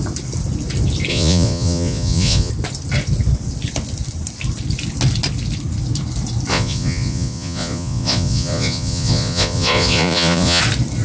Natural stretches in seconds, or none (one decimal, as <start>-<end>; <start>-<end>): 0.0-1.1; 2.5-6.5; 10.6-11.0